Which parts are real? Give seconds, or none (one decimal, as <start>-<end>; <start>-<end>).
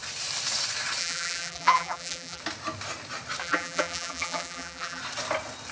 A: 0.0-1.0; 2.4-3.4; 5.0-5.7